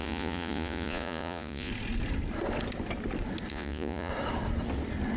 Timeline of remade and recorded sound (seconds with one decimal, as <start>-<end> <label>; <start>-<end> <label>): 0.0-1.7 remade; 1.7-3.5 recorded; 3.5-4.1 remade; 4.1-5.2 recorded